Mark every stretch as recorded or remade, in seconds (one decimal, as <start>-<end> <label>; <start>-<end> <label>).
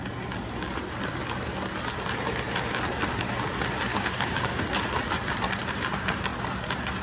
0.0-3.9 recorded; 3.9-4.6 remade; 4.6-7.0 recorded